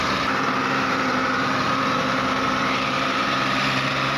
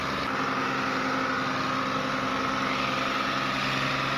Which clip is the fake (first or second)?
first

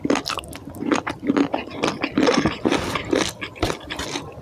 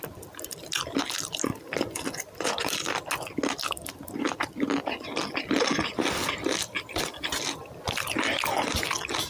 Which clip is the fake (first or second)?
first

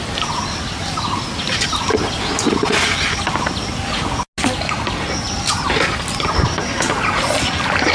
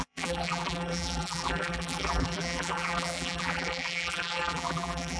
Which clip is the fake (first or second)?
second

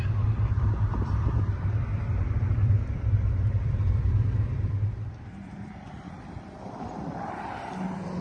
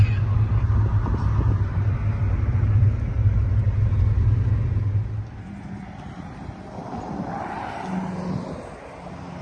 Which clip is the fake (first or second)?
first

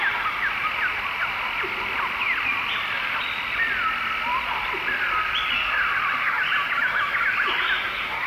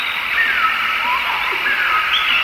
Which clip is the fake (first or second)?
second